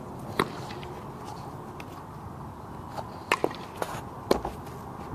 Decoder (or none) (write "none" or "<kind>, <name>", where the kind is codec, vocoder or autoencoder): none